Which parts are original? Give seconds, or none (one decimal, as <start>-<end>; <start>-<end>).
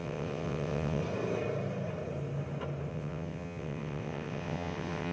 1.0-2.9